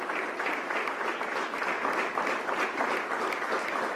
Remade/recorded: remade